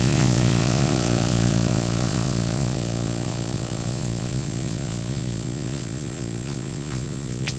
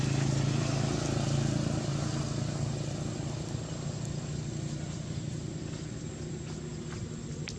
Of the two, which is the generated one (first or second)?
first